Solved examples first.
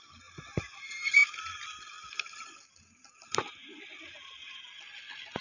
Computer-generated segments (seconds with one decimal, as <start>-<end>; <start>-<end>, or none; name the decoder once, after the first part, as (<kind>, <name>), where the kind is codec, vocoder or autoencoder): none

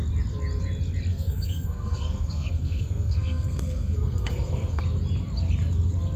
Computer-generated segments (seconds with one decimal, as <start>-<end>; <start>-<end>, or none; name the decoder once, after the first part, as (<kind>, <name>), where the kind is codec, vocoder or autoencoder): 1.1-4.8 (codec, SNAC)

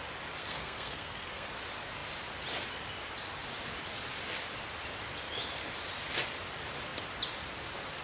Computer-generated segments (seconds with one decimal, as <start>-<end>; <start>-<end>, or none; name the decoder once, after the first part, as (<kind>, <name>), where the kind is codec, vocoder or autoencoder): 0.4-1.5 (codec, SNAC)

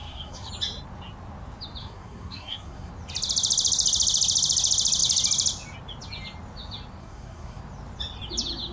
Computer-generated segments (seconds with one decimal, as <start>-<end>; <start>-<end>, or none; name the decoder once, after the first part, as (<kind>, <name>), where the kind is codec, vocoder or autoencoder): 0.0-0.5 (codec, SNAC); 1.8-2.9; 7.0-7.6

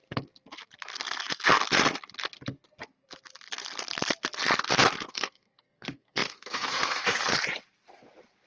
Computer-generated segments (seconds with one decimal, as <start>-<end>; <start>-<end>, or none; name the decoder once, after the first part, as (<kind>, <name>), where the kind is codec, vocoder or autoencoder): 5.1-7.3 (codec, SNAC)

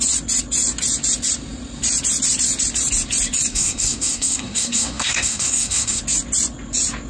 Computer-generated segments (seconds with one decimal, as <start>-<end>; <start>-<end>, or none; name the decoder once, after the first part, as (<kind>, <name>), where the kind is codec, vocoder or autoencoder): 3.5-6.0 (codec, SNAC)

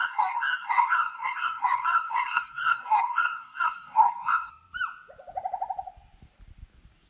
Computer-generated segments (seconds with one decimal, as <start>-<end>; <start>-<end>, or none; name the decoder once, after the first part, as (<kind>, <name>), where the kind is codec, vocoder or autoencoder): 0.0-4.5 (codec, SNAC)

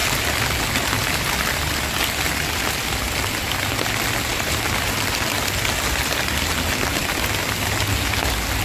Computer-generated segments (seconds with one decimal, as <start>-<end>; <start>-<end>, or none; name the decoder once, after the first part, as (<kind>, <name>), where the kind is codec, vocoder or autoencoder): none